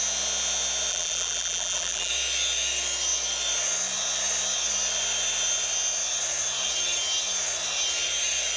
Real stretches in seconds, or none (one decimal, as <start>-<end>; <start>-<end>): 0.0-0.9; 2.1-8.6